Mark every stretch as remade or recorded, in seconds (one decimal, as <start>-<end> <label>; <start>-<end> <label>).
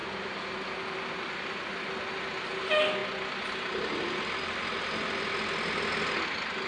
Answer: 0.0-6.7 recorded